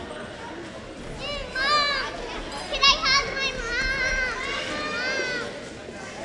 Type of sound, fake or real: real